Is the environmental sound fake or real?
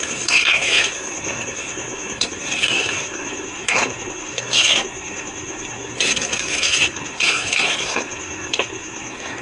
fake